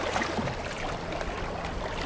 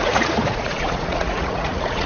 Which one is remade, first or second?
second